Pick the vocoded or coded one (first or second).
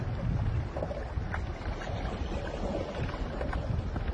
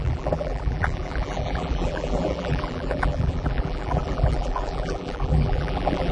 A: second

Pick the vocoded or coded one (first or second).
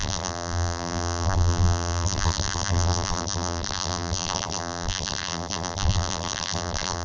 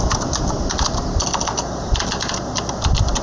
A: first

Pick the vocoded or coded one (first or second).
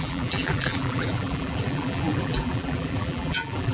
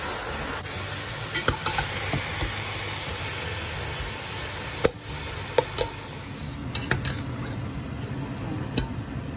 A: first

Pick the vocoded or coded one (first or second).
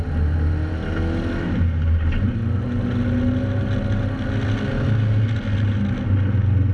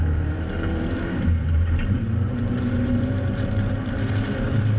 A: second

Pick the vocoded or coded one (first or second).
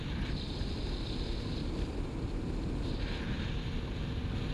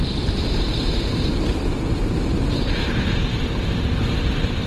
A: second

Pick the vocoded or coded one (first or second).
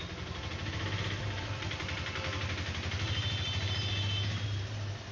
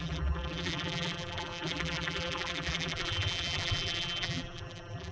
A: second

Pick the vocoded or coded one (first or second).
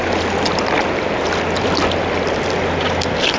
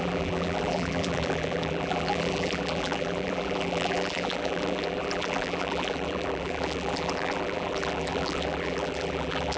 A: second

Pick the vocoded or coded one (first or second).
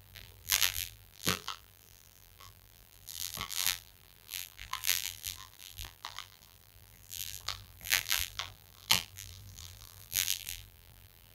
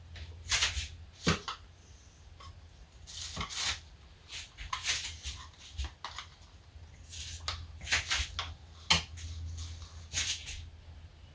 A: first